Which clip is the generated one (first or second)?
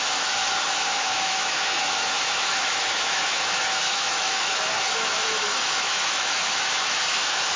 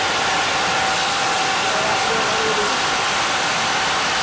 first